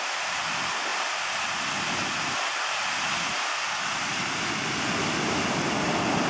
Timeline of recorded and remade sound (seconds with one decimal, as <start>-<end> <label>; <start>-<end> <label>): 0.0-6.3 recorded